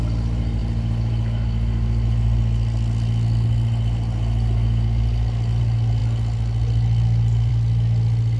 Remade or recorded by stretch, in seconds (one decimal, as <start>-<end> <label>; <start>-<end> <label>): 0.0-8.4 recorded